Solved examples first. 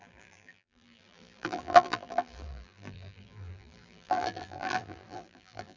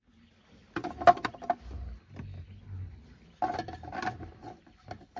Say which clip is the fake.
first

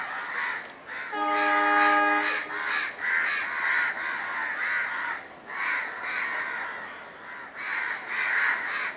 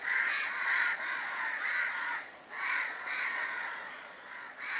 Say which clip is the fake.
second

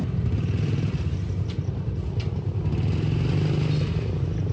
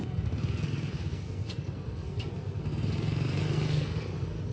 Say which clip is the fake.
second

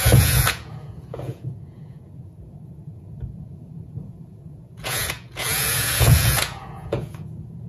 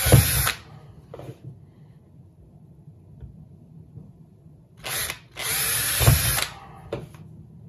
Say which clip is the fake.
first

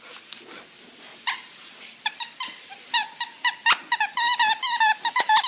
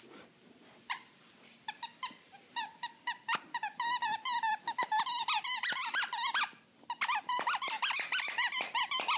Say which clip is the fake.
second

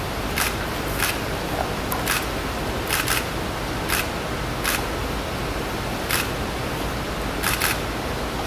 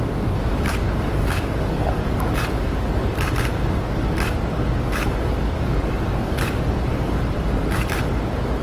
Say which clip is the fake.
second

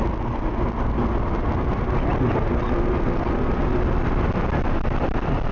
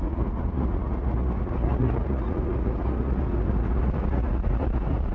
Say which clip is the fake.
second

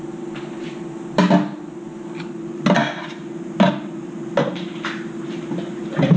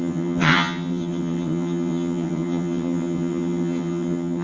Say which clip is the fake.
second